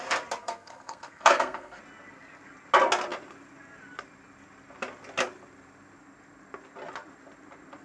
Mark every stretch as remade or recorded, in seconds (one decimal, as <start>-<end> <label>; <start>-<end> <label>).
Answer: 0.0-0.4 recorded; 0.4-1.8 remade; 1.8-7.8 recorded